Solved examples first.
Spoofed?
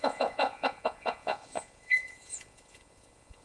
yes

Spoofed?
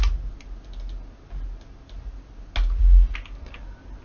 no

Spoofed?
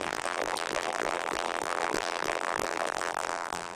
yes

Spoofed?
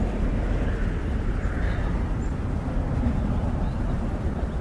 no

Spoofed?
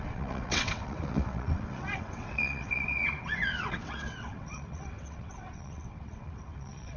yes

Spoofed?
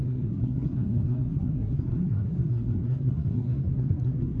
yes